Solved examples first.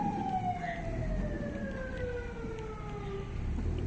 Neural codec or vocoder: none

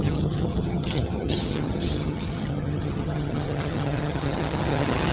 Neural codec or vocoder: vocoder, HiFi-GAN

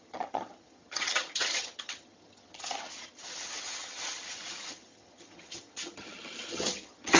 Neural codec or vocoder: vocoder, HiFi-GAN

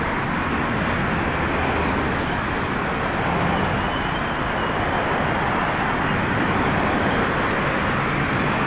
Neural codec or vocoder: none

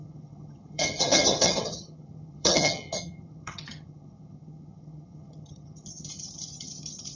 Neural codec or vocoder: vocoder, HiFi-GAN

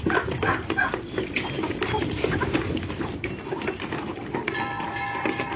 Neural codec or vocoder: none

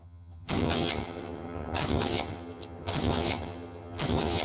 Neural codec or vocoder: vocoder, HiFi-GAN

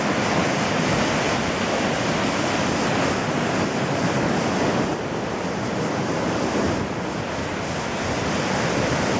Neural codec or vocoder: none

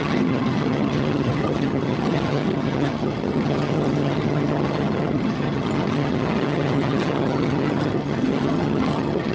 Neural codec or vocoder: vocoder, HiFi-GAN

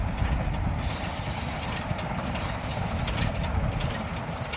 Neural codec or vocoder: none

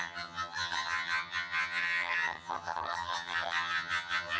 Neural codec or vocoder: vocoder, HiFi-GAN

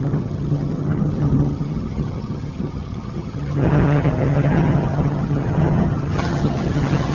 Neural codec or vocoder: vocoder, HiFi-GAN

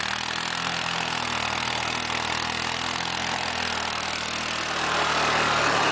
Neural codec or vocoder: none